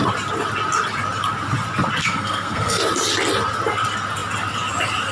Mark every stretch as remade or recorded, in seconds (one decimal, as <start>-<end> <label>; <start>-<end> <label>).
0.0-2.0 recorded; 2.0-2.8 remade; 2.8-5.1 recorded